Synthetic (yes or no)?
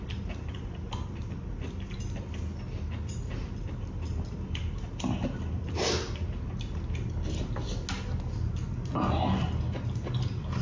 no